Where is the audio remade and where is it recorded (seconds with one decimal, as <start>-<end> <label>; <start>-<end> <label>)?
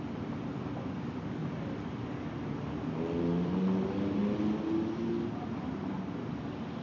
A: 0.0-6.8 recorded